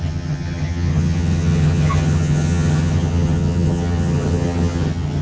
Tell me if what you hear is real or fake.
fake